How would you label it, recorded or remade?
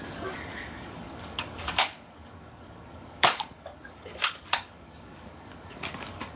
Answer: remade